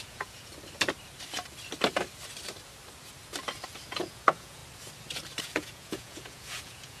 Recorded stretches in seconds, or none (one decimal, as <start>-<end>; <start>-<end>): 0.5-3.9; 4.6-5.4